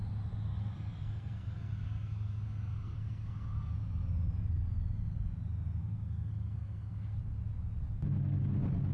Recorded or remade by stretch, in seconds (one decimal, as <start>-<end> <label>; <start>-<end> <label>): 0.0-0.5 recorded; 0.5-3.7 remade; 3.7-5.8 recorded; 5.8-7.2 remade; 7.2-8.9 recorded